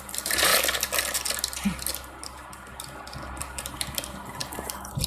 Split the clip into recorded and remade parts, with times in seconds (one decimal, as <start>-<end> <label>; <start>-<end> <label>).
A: 0.0-0.5 remade; 0.5-3.6 recorded; 3.6-5.1 remade